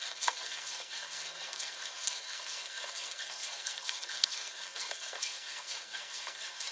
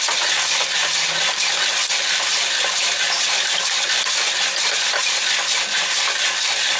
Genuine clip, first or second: second